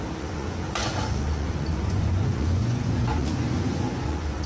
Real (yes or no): no